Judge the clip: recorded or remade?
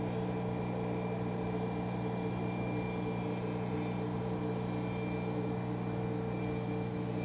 recorded